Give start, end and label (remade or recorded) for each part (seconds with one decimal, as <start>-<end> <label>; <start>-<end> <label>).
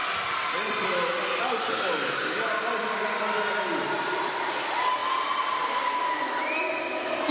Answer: 0.0-7.3 recorded